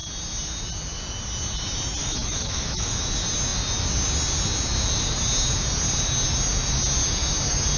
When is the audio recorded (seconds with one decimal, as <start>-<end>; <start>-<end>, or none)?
0.0-2.0; 3.0-7.8